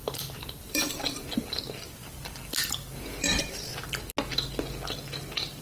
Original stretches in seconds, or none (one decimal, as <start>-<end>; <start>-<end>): 1.6-2.0; 4.0-5.6